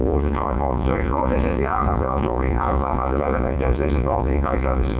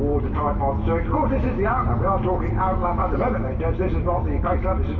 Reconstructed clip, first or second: first